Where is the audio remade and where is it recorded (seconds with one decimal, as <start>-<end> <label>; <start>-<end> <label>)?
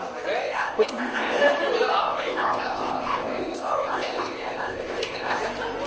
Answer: 0.0-0.4 recorded; 0.4-1.4 remade; 1.4-2.0 recorded; 2.0-5.4 remade; 5.4-5.9 recorded